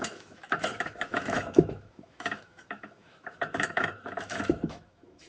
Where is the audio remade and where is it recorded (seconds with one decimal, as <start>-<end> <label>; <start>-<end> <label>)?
0.0-5.3 remade